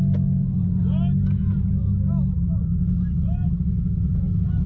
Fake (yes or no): no